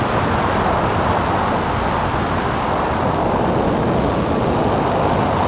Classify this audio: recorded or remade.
recorded